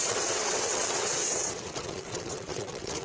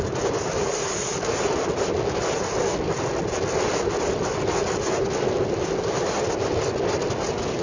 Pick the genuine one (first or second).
second